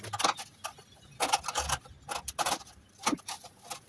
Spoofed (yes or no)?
no